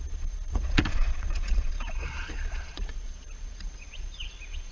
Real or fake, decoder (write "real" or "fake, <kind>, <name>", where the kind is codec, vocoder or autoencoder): fake, vocoder, Vocos